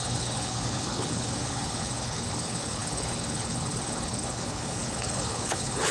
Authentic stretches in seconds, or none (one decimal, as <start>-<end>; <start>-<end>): none